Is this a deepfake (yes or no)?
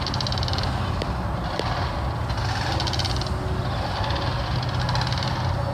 no